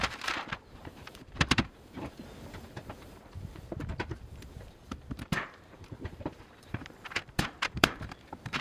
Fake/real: fake